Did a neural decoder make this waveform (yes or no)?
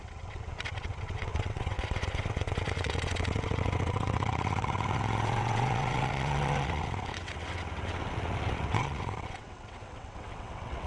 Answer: yes